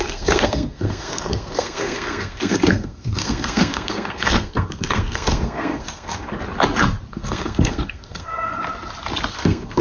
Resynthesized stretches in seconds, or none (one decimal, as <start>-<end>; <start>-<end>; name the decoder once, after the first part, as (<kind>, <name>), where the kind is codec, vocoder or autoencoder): 0.0-6.3 (codec, SNAC); 7.1-8.5; 9.3-9.8